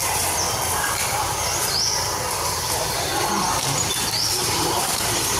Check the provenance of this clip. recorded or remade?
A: recorded